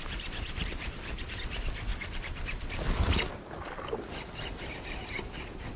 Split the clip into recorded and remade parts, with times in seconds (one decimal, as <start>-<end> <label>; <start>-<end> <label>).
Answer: 0.0-5.8 recorded